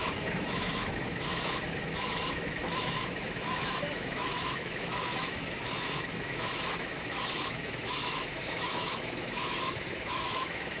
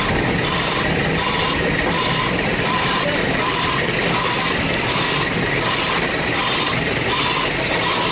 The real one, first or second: second